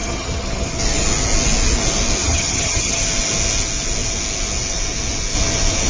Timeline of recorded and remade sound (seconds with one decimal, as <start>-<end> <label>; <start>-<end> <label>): 0.0-0.7 remade; 0.7-2.2 recorded; 2.2-3.0 remade; 3.0-5.9 recorded